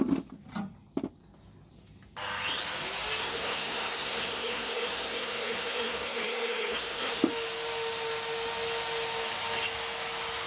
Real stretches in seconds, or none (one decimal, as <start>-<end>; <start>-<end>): 0.0-3.2; 7.2-10.5